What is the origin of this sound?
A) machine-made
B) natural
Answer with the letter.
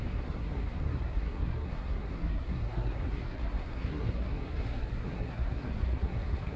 A